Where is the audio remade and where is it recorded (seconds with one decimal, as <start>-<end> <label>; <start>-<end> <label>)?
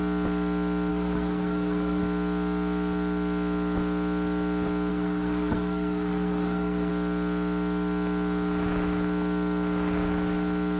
0.0-0.9 recorded; 0.9-2.0 remade; 2.0-4.9 recorded; 4.9-6.9 remade; 6.9-10.8 recorded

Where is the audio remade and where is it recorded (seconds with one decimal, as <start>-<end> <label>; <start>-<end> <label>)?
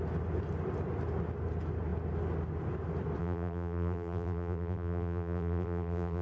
0.0-3.2 recorded; 3.2-6.2 remade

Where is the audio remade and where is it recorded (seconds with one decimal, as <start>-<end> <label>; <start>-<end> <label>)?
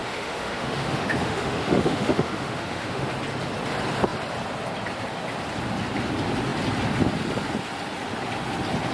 0.0-3.1 remade; 3.1-8.9 recorded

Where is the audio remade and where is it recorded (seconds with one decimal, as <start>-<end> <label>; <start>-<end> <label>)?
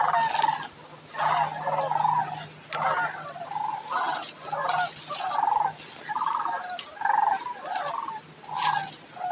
0.0-9.3 recorded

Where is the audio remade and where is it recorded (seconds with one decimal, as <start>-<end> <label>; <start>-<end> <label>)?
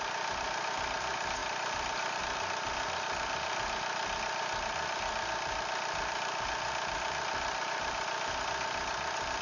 0.0-9.4 recorded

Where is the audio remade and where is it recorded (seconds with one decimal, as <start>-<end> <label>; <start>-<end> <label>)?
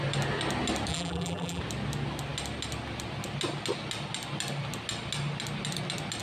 0.0-0.9 recorded; 0.9-1.6 remade; 1.6-6.2 recorded